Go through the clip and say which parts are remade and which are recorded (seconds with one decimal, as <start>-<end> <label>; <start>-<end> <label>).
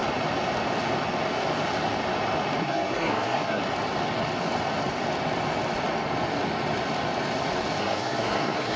0.0-2.6 recorded; 2.6-3.6 remade; 3.6-7.8 recorded; 7.8-8.8 remade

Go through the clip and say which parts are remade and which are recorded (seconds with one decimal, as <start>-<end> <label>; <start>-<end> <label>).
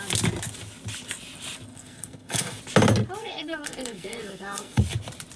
0.0-1.7 recorded; 1.7-2.6 remade; 2.6-3.2 recorded; 3.2-4.8 remade; 4.8-5.4 recorded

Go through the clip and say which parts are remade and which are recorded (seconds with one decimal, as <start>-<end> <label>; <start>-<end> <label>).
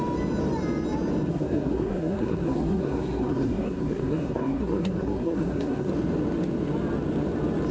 0.0-1.3 recorded; 1.3-5.9 remade; 5.9-7.7 recorded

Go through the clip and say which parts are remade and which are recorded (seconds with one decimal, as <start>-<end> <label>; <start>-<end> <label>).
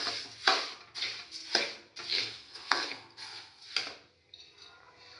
0.0-2.1 recorded; 2.1-3.6 remade; 3.6-5.2 recorded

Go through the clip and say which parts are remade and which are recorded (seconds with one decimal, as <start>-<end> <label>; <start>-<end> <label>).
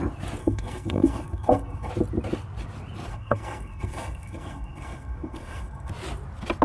0.0-0.4 recorded; 0.4-1.9 remade; 1.9-3.1 recorded; 3.1-5.9 remade; 5.9-6.6 recorded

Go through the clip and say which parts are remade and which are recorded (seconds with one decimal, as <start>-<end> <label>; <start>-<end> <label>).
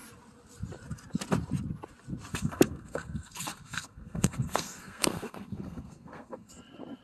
0.0-2.3 recorded; 2.3-6.5 remade; 6.5-7.0 recorded